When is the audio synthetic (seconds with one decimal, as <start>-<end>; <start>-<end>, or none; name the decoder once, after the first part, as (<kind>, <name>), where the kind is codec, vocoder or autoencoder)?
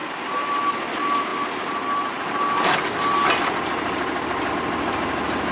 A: none